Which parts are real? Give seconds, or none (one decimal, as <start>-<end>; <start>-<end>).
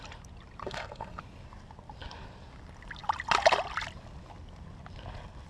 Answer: 0.0-0.6; 1.2-5.5